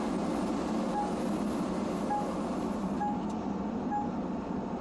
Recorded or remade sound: recorded